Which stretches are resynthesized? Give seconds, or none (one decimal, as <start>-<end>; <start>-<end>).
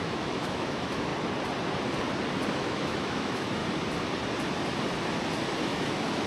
0.0-1.1; 2.5-3.6; 5.6-6.3